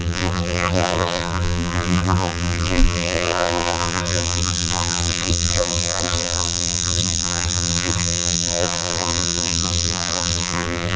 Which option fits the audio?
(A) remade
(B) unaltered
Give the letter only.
A